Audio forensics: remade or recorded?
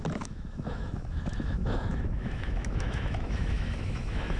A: remade